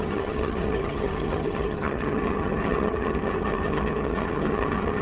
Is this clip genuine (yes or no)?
no